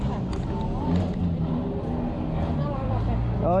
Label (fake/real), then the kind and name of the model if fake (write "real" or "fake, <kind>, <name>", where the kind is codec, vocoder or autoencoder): real